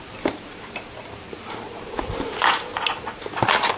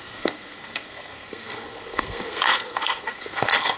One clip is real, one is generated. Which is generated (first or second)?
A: second